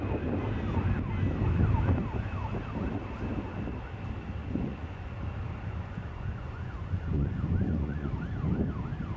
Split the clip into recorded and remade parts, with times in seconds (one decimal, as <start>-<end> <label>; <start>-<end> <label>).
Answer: 0.0-4.4 recorded; 4.4-5.1 remade; 5.1-5.8 recorded; 5.8-8.1 remade; 8.1-9.2 recorded